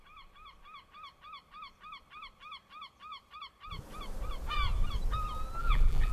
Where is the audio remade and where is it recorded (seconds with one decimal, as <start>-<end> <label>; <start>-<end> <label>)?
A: 0.0-5.6 recorded; 5.6-6.1 remade